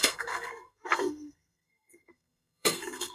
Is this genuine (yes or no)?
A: no